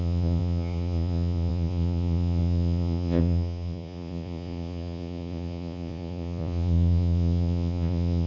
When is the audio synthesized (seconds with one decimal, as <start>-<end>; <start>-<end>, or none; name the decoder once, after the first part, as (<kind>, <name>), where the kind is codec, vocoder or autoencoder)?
0.0-8.3 (vocoder, Vocos)